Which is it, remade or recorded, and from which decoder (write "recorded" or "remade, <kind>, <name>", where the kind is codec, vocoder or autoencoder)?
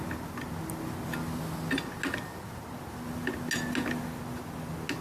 recorded